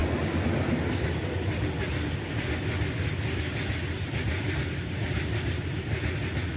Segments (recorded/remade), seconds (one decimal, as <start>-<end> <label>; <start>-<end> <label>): 0.0-6.6 recorded

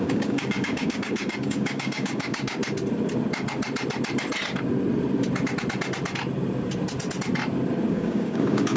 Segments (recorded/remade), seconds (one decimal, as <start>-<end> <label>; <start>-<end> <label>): 0.0-2.6 remade; 2.6-7.9 recorded; 7.9-8.8 remade

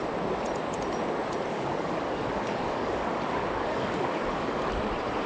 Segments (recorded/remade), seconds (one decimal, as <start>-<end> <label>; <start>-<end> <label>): 0.0-1.5 recorded; 1.5-4.7 remade; 4.7-5.3 recorded

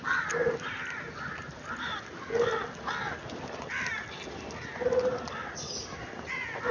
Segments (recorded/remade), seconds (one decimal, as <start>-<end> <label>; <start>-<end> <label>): 0.0-6.7 recorded

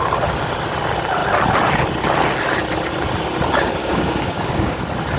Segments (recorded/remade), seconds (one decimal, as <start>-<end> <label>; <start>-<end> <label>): 0.0-3.8 recorded; 3.8-4.8 remade; 4.8-5.2 recorded